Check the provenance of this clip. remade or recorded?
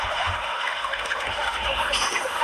remade